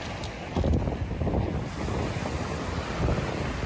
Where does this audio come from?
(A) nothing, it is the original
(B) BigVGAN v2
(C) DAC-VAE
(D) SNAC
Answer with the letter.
A